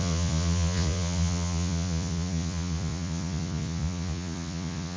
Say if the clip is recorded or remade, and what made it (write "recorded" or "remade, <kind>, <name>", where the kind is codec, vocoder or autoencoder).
remade, vocoder, Vocos